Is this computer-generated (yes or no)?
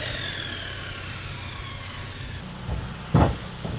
no